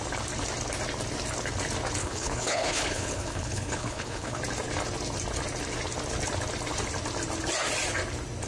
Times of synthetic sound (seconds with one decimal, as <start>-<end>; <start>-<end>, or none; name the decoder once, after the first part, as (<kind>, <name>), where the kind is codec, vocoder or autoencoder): 2.0-4.4 (codec, HILCodec)